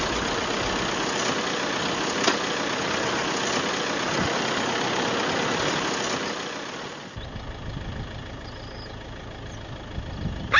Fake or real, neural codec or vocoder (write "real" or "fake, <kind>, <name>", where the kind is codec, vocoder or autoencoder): real